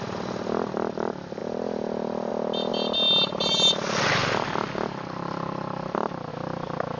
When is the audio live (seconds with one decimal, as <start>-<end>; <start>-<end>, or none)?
0.0-7.0